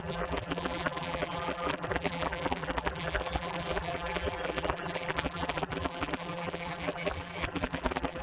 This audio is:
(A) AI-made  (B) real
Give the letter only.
A